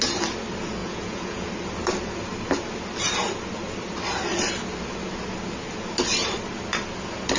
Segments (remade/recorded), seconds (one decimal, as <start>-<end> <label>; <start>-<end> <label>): 0.0-0.8 recorded; 0.8-1.5 remade; 1.5-7.4 recorded